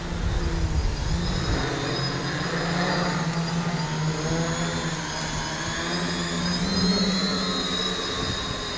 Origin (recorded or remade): recorded